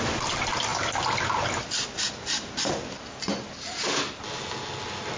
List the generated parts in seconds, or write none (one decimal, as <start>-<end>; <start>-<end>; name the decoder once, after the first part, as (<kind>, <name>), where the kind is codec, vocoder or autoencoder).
none